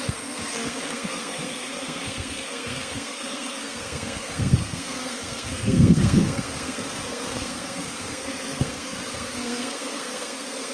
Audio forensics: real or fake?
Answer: fake